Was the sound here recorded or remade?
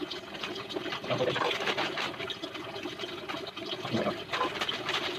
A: recorded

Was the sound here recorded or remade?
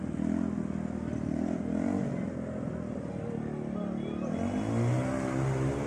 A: recorded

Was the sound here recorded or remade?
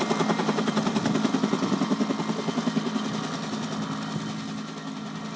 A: recorded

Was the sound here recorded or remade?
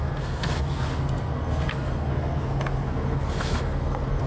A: remade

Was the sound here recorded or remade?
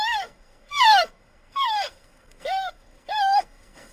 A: remade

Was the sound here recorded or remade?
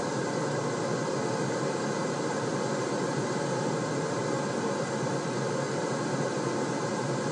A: recorded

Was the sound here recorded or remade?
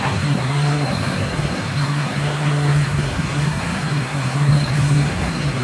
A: remade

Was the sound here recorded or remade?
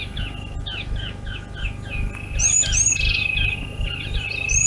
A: recorded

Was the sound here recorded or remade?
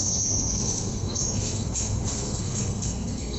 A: remade